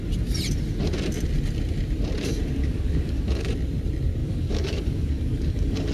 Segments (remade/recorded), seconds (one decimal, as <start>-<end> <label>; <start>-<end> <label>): 0.0-2.6 recorded; 2.6-3.5 remade; 3.5-4.2 recorded; 4.2-5.9 remade